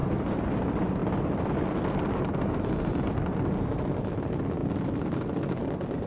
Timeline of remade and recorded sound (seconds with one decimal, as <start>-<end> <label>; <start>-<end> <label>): 0.0-6.1 recorded